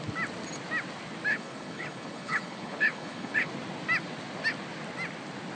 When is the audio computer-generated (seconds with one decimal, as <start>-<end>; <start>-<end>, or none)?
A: 1.3-3.5